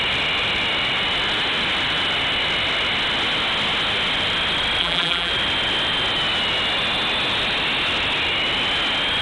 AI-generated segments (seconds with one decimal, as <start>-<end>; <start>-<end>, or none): 4.8-5.3

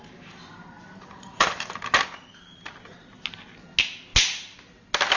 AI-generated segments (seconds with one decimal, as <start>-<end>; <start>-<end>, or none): 0.5-1.8

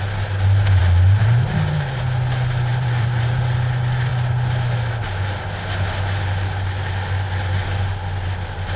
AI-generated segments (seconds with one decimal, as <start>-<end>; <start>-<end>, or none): 0.8-2.0; 2.7-3.4

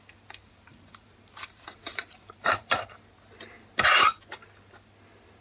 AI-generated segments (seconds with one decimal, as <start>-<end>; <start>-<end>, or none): 0.4-2.7